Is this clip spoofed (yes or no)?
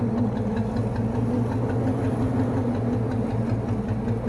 no